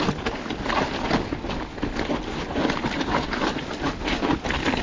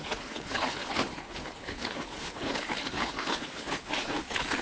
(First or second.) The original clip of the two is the first